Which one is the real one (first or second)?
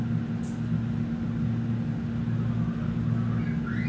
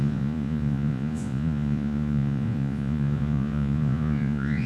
first